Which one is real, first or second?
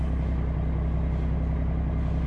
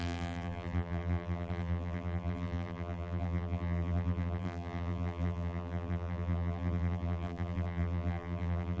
first